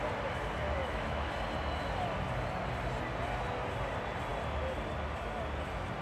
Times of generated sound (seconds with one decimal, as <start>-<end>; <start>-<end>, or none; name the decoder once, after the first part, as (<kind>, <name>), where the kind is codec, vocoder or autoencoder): 0.8-1.3 (autoencoder, DAC-VAE)